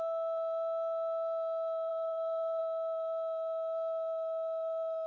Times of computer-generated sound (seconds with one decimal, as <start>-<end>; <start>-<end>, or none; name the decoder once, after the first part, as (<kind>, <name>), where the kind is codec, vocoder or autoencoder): 1.9-2.6 (codec, SNAC)